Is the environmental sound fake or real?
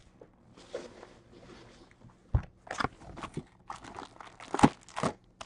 real